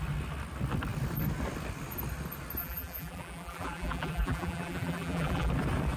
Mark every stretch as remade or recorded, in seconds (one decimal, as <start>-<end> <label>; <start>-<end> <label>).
0.0-2.6 recorded; 2.6-5.5 remade; 5.5-6.0 recorded